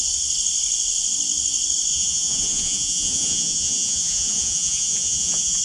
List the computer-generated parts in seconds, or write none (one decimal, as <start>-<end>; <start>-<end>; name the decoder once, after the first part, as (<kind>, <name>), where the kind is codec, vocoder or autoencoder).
1.9-5.6 (vocoder, Vocos)